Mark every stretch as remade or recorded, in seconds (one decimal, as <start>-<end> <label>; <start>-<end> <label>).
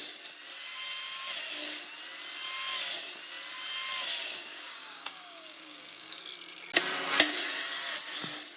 0.0-4.2 recorded; 4.2-6.2 remade; 6.2-8.6 recorded